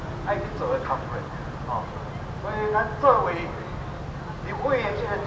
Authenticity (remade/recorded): recorded